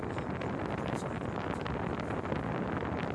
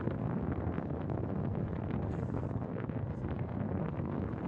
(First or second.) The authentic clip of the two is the first